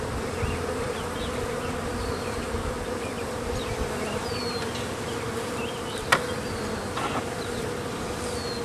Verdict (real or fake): real